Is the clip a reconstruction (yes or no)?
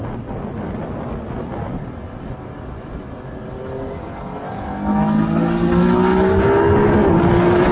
no